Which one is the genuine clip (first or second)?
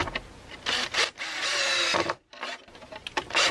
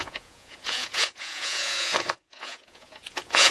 first